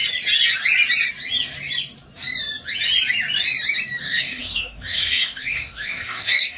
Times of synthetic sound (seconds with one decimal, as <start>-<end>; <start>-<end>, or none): 4.0-6.6